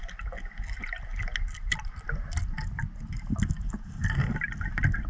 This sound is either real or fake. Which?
real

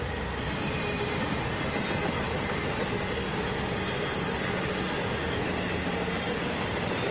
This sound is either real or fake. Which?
real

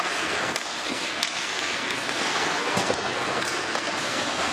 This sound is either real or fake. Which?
fake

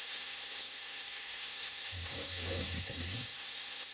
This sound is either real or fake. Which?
fake